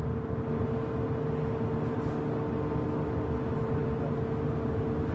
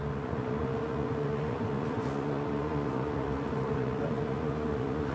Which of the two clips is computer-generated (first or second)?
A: second